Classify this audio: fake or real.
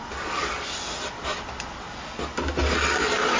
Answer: real